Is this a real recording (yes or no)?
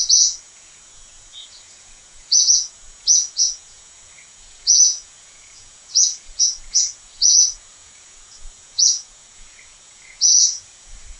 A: no